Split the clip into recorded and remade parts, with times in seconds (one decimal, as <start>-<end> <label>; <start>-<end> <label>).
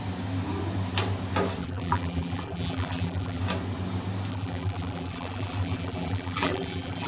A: 0.0-1.6 recorded; 1.6-3.4 remade; 3.4-4.3 recorded; 4.3-7.1 remade